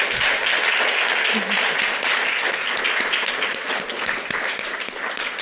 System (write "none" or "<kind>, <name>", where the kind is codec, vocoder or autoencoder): none